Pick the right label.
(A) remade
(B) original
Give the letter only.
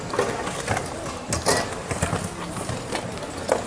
B